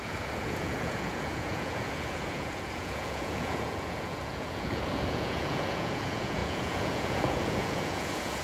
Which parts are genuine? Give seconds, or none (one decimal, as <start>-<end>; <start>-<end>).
none